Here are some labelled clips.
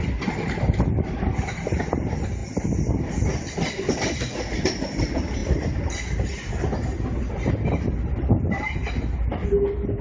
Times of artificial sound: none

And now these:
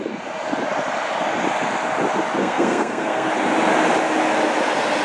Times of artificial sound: 2.4-3.3 (codec, SNAC)

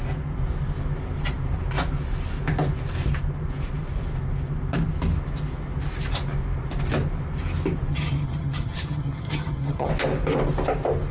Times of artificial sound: 7.9-9.9 (vocoder, HiFi-GAN)

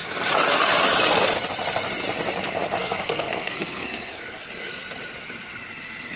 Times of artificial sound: 2.8-4.2 (codec, SNAC)

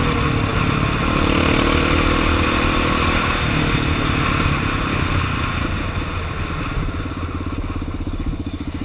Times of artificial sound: none